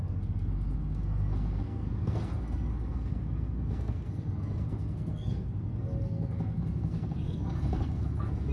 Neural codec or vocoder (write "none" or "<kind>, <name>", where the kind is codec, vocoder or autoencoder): codec, SNAC